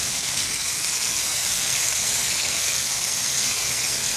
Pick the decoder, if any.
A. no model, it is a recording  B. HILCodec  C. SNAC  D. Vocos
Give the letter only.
C